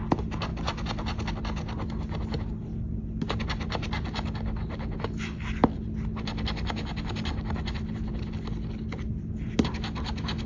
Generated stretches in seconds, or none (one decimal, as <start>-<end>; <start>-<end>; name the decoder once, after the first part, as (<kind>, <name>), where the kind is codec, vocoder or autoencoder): none